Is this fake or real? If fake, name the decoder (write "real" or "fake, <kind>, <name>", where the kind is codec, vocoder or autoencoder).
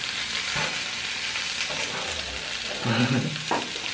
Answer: real